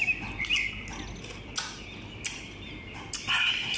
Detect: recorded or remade recorded